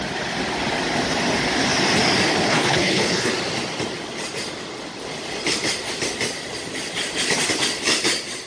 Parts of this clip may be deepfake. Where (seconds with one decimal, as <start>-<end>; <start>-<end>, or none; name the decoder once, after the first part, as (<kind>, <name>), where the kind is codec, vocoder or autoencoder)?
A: 2.3-3.3 (codec, HILCodec)